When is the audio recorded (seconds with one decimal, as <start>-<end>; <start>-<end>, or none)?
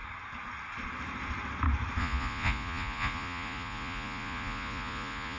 0.0-2.0